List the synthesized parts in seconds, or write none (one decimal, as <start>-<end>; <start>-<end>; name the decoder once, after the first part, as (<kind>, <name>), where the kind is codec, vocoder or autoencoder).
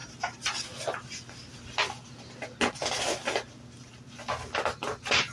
none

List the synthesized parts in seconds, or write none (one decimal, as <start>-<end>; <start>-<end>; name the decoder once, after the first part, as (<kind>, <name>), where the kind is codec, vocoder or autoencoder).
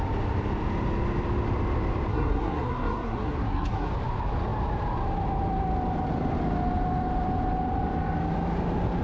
2.1-3.9 (codec, SNAC)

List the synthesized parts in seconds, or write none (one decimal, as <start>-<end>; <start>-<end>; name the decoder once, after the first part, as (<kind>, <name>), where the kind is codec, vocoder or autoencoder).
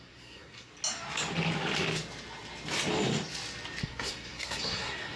0.0-0.7 (codec, SNAC); 3.8-5.2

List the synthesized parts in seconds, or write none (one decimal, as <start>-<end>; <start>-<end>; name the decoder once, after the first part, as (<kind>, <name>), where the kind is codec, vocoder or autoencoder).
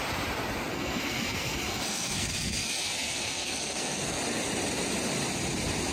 0.7-4.2 (codec, SNAC)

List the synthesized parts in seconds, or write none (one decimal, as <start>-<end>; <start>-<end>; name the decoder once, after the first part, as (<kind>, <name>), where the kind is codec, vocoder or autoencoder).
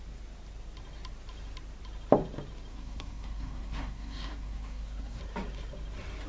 2.7-5.2 (codec, SNAC)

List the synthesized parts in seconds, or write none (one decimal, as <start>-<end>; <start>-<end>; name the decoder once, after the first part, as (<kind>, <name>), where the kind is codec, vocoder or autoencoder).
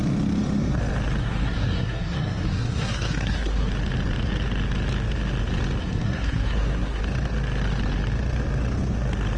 1.2-3.7 (codec, SNAC); 5.8-7.0